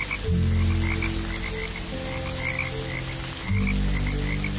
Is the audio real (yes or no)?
yes